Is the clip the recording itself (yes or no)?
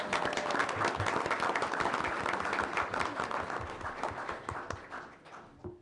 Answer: yes